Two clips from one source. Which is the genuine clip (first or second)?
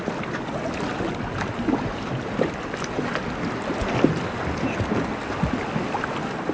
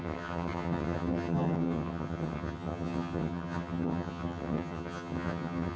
first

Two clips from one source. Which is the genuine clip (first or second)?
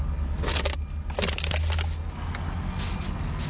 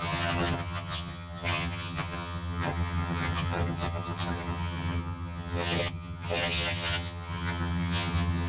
first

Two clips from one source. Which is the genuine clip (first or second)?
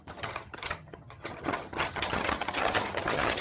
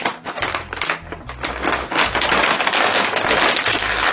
second